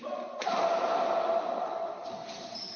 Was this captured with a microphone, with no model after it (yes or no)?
yes